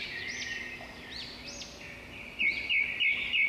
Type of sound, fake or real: real